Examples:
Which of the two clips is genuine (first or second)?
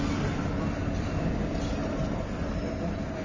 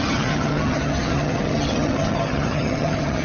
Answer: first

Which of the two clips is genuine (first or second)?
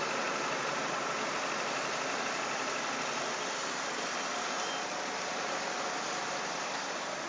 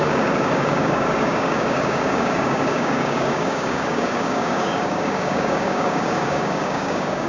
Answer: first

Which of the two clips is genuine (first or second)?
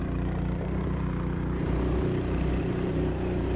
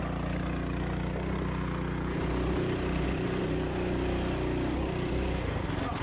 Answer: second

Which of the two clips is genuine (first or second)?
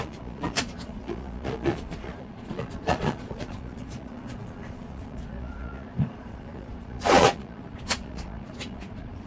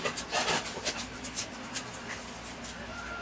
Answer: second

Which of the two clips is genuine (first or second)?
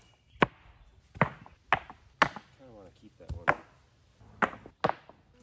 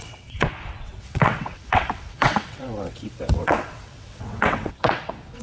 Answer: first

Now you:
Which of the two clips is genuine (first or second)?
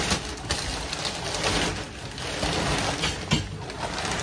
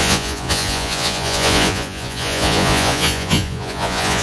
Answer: first